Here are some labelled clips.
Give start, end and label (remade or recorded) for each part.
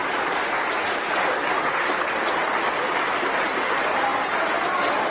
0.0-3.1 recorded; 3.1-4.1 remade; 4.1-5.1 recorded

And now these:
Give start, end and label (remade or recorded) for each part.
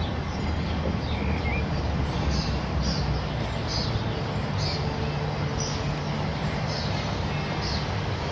0.0-1.5 recorded; 1.5-3.1 remade; 3.1-6.3 recorded; 6.3-7.2 remade; 7.2-8.3 recorded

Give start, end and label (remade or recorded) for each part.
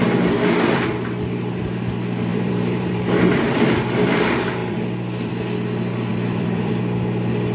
0.0-2.3 recorded; 2.3-2.9 remade; 2.9-4.6 recorded; 4.6-5.3 remade; 5.3-6.1 recorded; 6.1-6.8 remade; 6.8-7.5 recorded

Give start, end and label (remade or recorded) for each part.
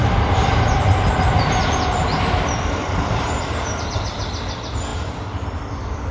0.0-2.1 remade; 2.1-2.8 recorded; 2.8-3.9 remade; 3.9-4.9 recorded; 4.9-5.6 remade; 5.6-6.1 recorded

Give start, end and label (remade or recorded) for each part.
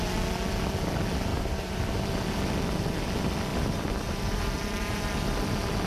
0.0-1.3 recorded; 1.3-1.9 remade; 1.9-3.5 recorded; 3.5-5.1 remade; 5.1-5.9 recorded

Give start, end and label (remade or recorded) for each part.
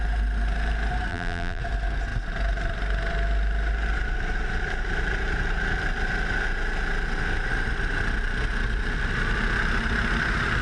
0.0-1.1 recorded; 1.1-1.6 remade; 1.6-10.6 recorded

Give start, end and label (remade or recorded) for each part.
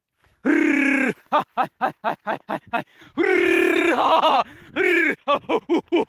0.0-0.4 remade; 0.4-3.8 recorded; 3.8-4.5 remade; 4.5-6.1 recorded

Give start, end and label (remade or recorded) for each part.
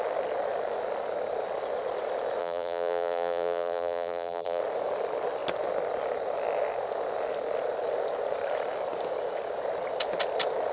0.0-2.4 recorded; 2.4-4.6 remade; 4.6-10.7 recorded